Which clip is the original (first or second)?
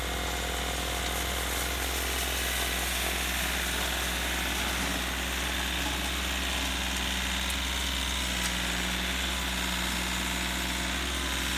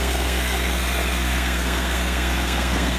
first